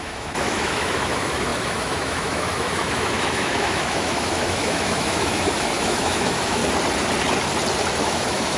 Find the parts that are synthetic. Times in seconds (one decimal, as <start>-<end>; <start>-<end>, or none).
0.0-6.6; 8.0-8.6